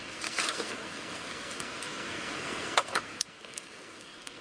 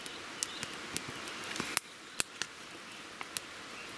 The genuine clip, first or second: second